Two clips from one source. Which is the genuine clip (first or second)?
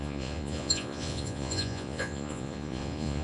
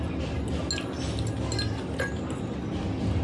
second